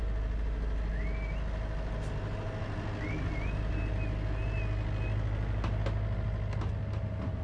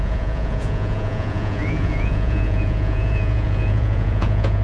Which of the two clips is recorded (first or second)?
first